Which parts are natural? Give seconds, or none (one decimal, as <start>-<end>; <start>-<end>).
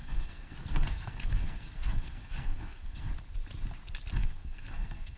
3.1-4.2